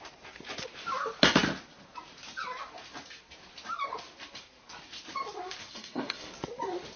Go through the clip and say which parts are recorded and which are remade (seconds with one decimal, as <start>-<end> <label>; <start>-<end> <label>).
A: 0.0-5.7 recorded; 5.7-6.3 remade; 6.3-7.0 recorded

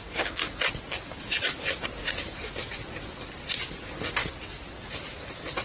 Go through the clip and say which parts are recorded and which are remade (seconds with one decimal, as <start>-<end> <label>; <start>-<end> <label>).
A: 0.0-5.6 recorded

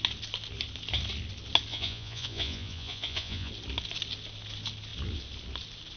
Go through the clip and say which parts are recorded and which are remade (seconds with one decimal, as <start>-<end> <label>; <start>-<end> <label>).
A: 0.0-1.7 recorded; 1.7-3.5 remade; 3.5-6.0 recorded